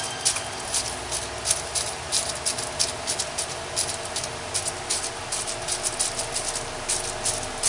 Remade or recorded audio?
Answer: recorded